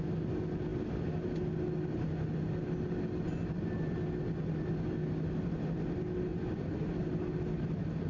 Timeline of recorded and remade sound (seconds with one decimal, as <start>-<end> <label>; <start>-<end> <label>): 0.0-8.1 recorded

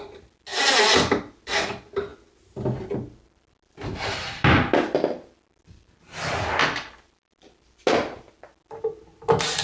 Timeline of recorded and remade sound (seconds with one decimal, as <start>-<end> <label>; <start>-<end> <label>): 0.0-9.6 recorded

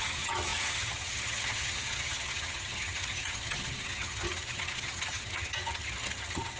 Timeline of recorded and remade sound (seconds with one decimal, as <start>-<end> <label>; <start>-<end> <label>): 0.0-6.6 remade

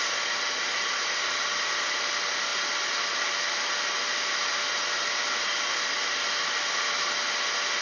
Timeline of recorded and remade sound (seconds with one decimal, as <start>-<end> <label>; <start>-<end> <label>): 0.0-7.8 recorded

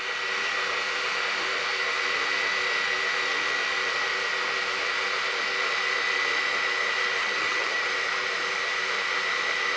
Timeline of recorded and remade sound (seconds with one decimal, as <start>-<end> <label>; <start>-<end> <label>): 0.0-7.2 recorded; 7.2-7.9 remade; 7.9-9.8 recorded